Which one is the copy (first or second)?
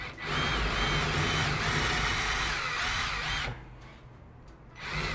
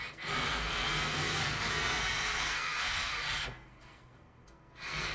second